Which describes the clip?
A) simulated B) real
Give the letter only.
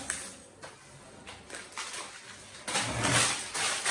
B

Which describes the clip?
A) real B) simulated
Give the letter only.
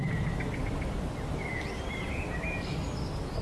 A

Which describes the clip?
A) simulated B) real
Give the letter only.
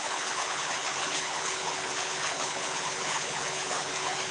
A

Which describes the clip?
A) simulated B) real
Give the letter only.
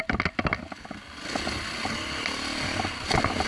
B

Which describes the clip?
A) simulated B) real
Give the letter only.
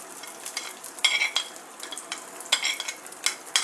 B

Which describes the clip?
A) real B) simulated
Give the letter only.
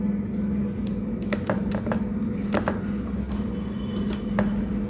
A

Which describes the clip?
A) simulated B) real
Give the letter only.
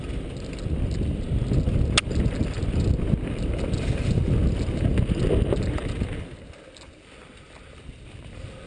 B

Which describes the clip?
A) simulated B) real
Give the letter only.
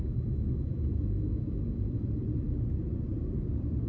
B